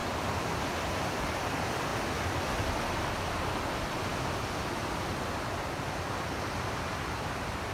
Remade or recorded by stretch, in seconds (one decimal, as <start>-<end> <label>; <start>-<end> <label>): 0.0-7.7 recorded